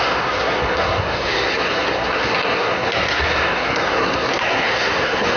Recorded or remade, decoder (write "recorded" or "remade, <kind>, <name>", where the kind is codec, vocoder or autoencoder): remade, codec, SNAC